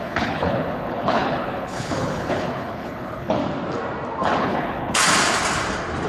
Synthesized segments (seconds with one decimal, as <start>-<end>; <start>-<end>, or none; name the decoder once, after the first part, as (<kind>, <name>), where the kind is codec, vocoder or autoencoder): 0.0-3.4 (codec, HILCodec); 4.4-5.0